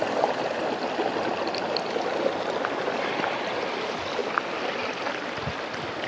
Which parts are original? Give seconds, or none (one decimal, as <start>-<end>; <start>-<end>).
0.0-6.1